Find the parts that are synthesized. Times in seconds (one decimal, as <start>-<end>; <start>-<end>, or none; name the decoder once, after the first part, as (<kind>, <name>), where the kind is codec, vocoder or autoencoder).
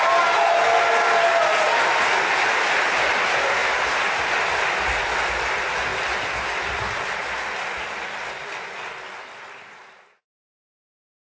none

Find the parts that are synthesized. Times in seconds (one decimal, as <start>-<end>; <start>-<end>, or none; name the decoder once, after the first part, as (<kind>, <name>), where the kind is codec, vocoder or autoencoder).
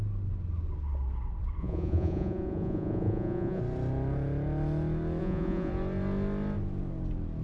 1.6-3.6 (vocoder, Vocos); 5.2-5.7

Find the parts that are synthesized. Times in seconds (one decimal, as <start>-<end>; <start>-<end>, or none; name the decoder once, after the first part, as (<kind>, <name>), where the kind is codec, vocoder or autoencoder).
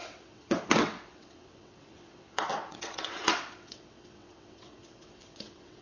0.0-5.8 (vocoder, WaveNeXt)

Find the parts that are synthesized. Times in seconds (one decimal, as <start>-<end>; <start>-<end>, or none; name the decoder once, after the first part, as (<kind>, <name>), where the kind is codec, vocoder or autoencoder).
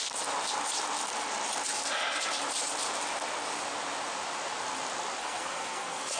5.2-6.2 (codec, SNAC)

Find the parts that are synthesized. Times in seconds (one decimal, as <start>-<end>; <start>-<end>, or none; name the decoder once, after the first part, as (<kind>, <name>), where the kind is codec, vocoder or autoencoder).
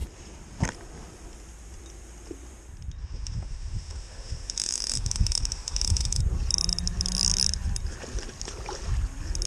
3.0-6.2 (autoencoder, DAC-VAE)